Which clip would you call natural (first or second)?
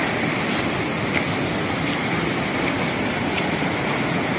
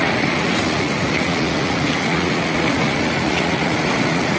first